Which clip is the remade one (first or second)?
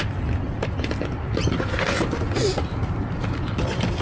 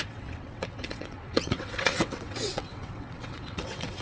second